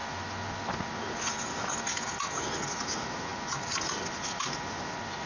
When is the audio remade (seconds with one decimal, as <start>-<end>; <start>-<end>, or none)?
none

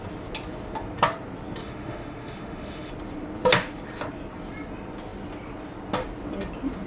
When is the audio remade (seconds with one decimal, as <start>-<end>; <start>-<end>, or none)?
1.6-2.9

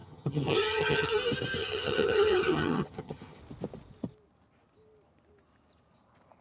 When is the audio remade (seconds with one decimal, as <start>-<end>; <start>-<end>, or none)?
0.0-1.1; 1.6-3.4